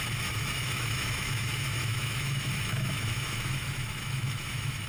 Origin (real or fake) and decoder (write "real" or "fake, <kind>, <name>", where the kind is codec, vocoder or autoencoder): fake, autoencoder, DAC-VAE